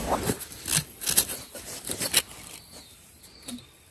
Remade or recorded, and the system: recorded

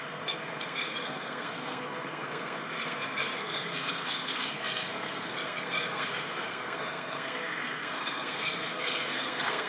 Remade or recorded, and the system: remade, codec, SNAC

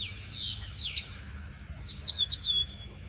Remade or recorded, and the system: remade, autoencoder, DAC-VAE